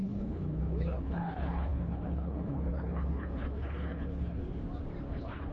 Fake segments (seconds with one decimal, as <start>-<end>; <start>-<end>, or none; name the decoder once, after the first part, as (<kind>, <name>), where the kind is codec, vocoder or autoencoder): 0.0-4.4 (codec, HILCodec); 5.1-5.5